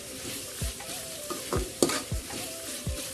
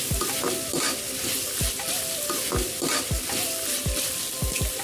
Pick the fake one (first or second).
first